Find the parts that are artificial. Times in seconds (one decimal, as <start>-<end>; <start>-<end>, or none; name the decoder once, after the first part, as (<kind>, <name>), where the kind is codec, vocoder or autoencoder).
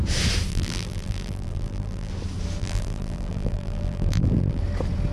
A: 0.5-2.1 (vocoder, BigVGAN v2); 2.6-4.6